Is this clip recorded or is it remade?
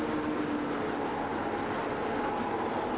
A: recorded